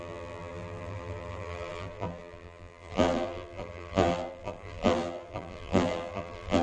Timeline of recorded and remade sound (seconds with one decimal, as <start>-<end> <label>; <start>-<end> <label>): 0.0-6.6 remade